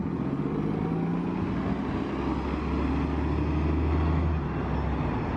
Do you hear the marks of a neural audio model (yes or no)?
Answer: no